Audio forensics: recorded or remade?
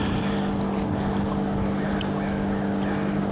recorded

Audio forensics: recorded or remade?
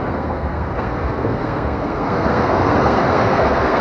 remade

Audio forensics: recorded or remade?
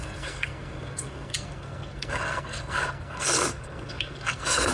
remade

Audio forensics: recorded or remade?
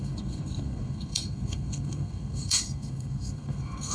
remade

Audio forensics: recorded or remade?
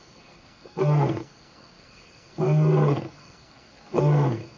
remade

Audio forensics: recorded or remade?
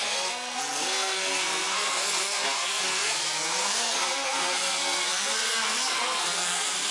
remade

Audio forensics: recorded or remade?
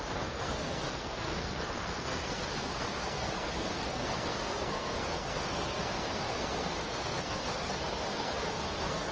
remade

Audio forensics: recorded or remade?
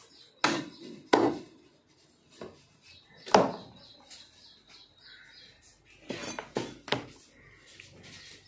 recorded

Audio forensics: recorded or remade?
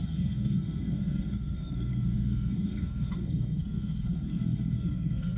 remade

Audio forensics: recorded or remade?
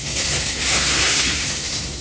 remade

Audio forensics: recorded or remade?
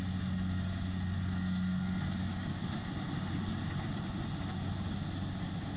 recorded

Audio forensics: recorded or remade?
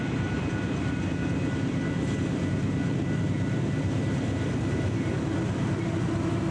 recorded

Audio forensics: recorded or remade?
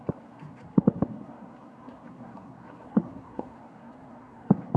remade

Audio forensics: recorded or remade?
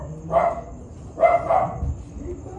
recorded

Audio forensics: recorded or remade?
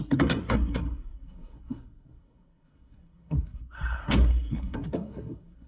remade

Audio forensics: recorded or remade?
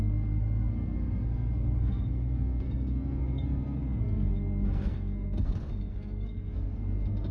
remade